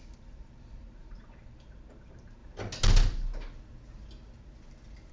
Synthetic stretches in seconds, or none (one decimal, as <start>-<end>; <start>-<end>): 0.0-2.4